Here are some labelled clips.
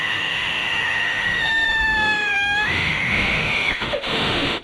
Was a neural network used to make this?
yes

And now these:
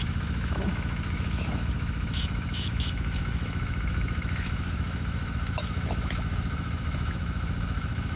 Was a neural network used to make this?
yes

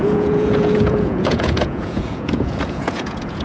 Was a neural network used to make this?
yes